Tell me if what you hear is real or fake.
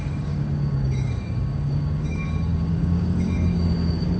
fake